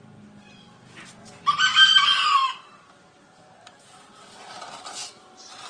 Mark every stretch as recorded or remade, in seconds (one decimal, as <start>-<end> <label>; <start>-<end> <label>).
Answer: 0.0-5.7 recorded